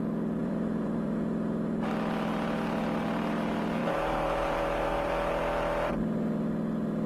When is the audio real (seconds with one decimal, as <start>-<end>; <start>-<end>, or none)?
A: 0.0-0.4; 1.2-3.8; 5.4-7.1